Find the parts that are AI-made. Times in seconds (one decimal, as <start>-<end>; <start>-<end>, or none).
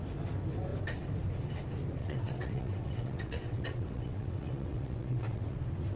2.0-5.6